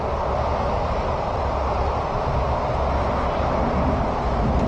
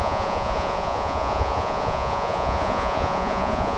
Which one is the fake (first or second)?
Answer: second